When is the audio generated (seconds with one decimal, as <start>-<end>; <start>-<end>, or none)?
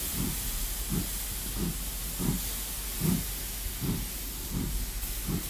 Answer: none